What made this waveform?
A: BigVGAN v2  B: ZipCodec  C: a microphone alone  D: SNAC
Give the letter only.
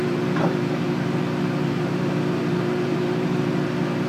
A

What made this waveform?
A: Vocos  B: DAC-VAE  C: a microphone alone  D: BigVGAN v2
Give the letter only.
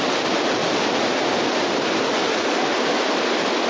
C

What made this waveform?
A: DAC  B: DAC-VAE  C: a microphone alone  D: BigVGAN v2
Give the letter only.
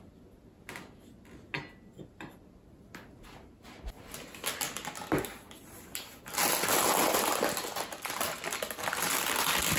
C